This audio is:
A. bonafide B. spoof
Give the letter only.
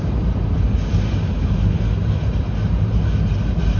A